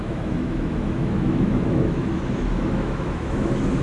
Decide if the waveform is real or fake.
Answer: fake